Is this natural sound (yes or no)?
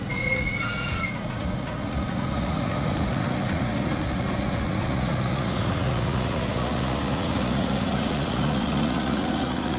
no